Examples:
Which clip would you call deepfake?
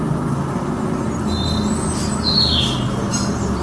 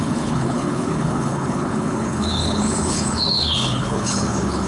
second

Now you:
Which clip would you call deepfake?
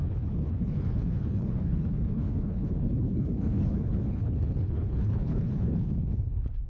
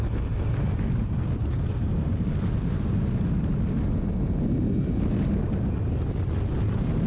first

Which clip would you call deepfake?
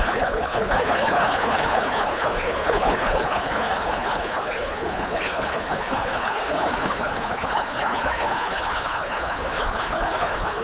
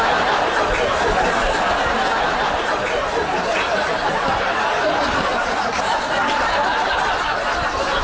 first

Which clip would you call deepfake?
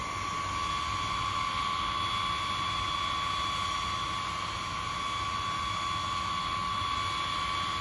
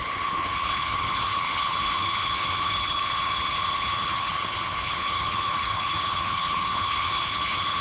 second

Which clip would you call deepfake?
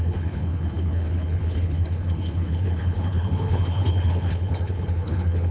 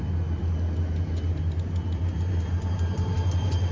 first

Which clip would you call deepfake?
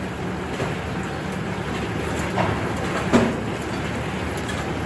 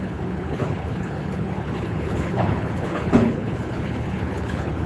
second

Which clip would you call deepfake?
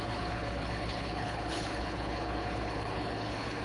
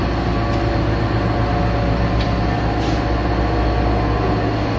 first